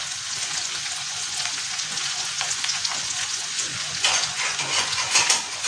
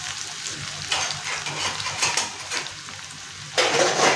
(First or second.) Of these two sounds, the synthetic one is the first